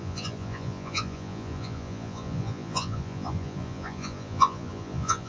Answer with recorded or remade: remade